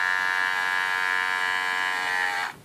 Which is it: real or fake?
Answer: real